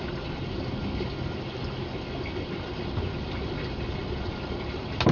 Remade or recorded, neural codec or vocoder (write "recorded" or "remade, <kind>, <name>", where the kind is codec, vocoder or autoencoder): recorded